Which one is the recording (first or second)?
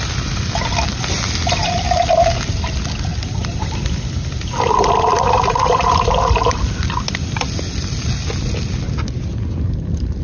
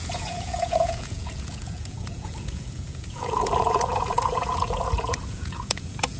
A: first